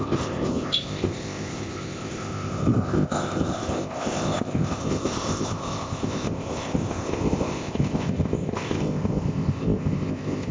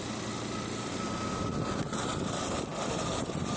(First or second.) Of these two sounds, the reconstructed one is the first